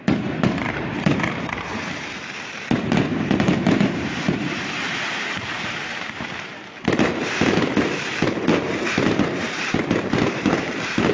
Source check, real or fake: fake